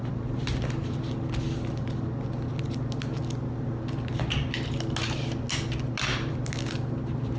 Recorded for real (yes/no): yes